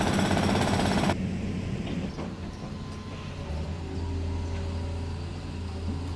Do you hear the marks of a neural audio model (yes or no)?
no